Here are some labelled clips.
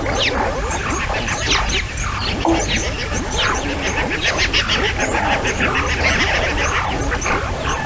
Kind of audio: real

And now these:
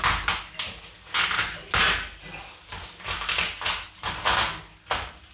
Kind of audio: real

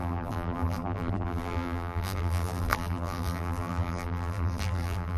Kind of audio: fake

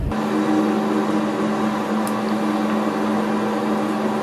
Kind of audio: real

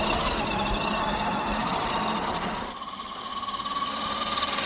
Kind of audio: real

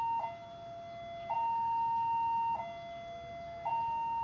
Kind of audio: real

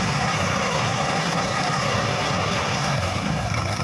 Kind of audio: fake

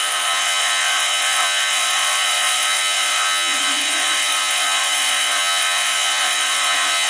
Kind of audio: fake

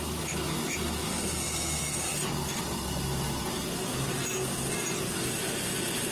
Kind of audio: real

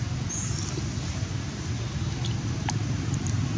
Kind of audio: real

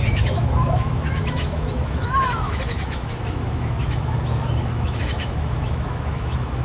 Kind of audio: fake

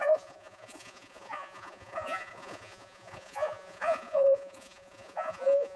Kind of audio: fake